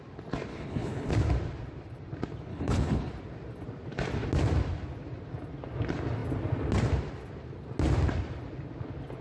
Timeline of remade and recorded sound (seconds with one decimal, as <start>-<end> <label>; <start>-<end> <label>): 0.0-0.5 recorded; 0.5-1.1 remade; 1.1-2.5 recorded; 2.5-3.1 remade; 3.1-9.2 recorded

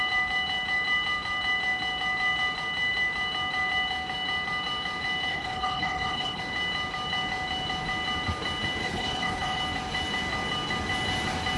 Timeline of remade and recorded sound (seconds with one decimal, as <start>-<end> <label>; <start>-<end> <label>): 0.0-5.3 recorded; 5.3-6.4 remade; 6.4-8.8 recorded; 8.8-9.6 remade; 9.6-11.6 recorded

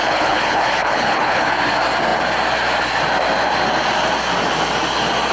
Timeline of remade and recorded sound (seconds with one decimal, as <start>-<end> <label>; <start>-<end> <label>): 0.0-1.5 remade; 1.5-5.3 recorded

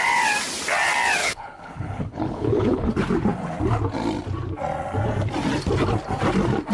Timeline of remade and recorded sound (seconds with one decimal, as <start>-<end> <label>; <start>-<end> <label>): 0.0-1.2 recorded; 1.2-2.9 remade; 2.9-6.7 recorded

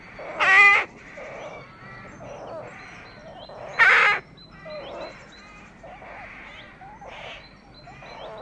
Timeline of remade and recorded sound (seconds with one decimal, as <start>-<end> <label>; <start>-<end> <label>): 0.0-8.4 recorded

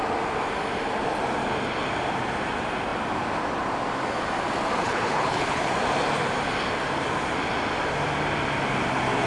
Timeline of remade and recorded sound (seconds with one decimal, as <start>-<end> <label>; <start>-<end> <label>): 0.0-4.8 recorded; 4.8-5.7 remade; 5.7-9.3 recorded

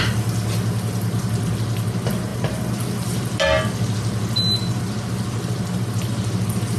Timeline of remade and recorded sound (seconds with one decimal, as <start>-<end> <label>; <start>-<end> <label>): 0.0-6.8 recorded